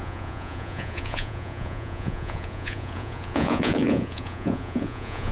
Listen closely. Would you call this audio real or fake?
fake